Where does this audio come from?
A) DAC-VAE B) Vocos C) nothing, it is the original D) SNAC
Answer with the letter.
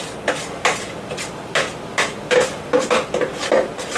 C